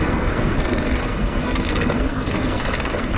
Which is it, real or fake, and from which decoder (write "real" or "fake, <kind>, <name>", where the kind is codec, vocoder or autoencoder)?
fake, codec, SNAC